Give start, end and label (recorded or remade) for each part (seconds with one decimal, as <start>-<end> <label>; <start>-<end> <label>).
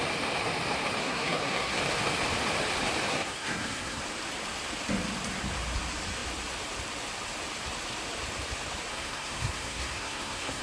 0.0-1.0 recorded; 1.0-1.8 remade; 1.8-3.1 recorded; 3.1-4.0 remade; 4.0-8.9 recorded; 8.9-10.6 remade